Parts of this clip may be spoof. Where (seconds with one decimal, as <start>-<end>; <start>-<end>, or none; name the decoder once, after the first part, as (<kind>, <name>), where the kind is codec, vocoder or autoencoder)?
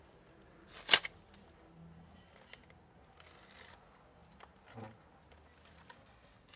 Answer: none